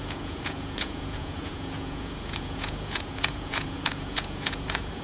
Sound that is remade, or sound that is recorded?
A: remade